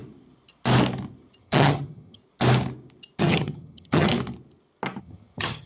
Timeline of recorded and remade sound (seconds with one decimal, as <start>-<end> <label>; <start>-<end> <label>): 0.0-1.4 recorded; 1.4-2.2 remade; 2.2-3.2 recorded; 3.2-4.1 remade; 4.1-5.0 recorded; 5.0-5.7 remade